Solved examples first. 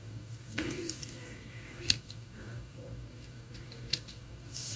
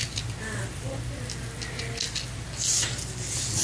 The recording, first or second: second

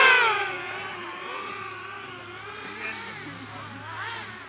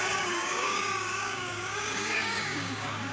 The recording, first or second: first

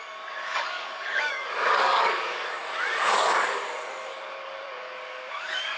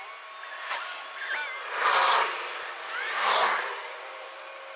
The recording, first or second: second